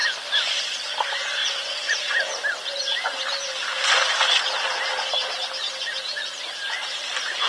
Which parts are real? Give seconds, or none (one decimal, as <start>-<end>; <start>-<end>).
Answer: 0.0-7.5